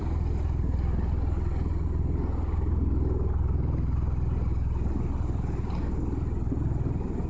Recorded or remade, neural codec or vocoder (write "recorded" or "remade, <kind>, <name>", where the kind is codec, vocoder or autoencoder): recorded